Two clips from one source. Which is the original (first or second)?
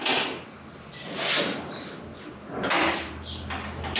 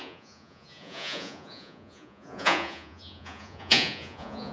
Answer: first